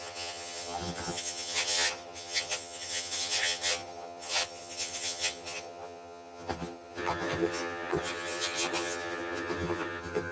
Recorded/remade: remade